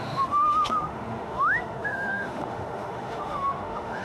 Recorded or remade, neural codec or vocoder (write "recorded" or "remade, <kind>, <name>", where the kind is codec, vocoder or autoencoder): remade, autoencoder, DAC-VAE